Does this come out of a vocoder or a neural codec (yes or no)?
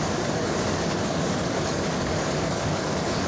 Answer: yes